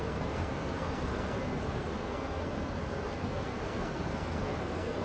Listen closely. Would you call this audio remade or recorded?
remade